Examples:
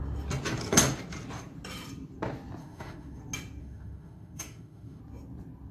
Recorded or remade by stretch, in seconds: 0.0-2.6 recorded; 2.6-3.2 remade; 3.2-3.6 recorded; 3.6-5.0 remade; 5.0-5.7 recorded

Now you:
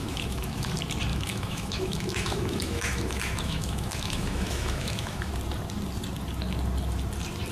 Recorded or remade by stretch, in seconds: 0.0-0.7 remade; 0.7-1.1 recorded; 1.1-5.3 remade; 5.3-7.5 recorded